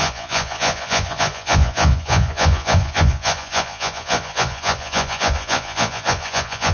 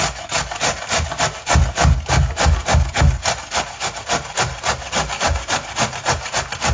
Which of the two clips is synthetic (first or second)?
first